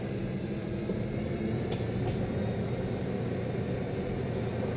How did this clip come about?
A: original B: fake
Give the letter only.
A